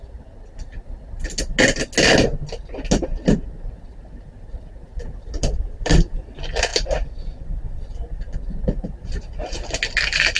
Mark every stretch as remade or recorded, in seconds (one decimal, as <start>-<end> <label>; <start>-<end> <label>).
0.0-4.9 recorded; 4.9-6.3 remade; 6.3-6.7 recorded; 6.7-8.5 remade; 8.5-10.4 recorded